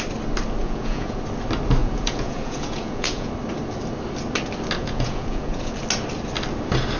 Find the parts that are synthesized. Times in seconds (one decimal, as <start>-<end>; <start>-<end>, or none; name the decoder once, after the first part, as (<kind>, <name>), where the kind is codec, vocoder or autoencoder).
0.6-1.2 (vocoder, Vocos); 1.8-3.3; 4.8-5.8